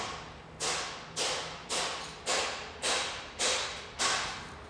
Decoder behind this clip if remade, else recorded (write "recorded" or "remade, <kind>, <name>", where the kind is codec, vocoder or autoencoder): recorded